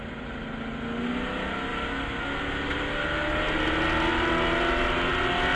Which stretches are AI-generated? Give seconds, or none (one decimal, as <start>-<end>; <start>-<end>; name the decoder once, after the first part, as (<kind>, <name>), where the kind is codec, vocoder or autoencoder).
none